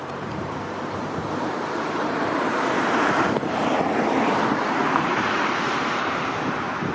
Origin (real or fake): fake